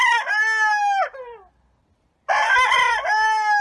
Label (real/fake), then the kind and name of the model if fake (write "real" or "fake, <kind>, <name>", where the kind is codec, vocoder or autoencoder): real